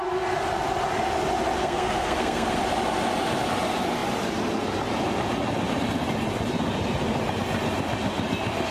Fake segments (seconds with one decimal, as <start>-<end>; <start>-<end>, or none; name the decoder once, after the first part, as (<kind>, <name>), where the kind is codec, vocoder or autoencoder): 1.6-2.6 (codec, SNAC)